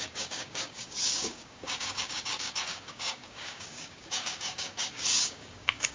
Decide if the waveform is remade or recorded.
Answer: remade